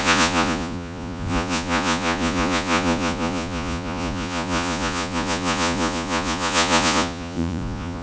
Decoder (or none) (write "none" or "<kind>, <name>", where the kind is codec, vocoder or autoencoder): vocoder, Vocos